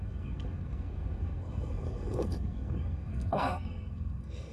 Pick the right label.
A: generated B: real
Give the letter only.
A